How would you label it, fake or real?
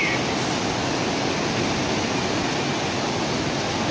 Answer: real